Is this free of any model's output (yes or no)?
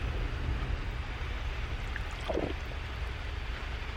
yes